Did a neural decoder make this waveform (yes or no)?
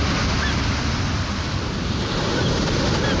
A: no